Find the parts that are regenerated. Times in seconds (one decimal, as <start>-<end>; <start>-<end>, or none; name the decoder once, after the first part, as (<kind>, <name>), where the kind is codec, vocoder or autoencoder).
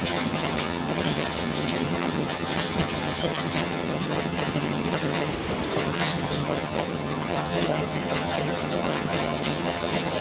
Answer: 0.0-5.3 (vocoder, HiFi-GAN); 5.8-10.2